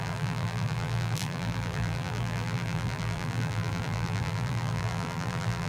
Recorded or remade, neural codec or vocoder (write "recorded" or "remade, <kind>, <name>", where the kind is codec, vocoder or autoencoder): remade, vocoder, BigVGAN v2